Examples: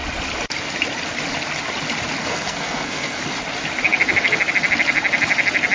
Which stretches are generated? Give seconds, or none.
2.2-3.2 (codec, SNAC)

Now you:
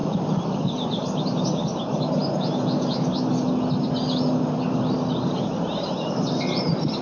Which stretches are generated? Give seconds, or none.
none

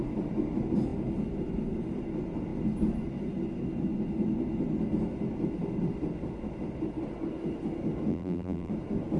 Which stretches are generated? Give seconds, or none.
8.1-8.7 (vocoder, BigVGAN v2)

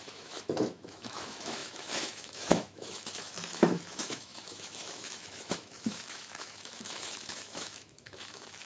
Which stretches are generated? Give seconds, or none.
0.0-8.7 (autoencoder, DAC-VAE)